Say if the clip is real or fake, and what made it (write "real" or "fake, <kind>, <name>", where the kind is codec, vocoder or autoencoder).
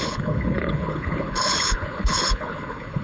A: fake, codec, HILCodec